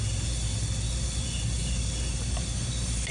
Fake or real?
real